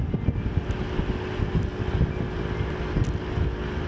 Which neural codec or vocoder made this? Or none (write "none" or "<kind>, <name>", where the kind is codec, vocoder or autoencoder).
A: none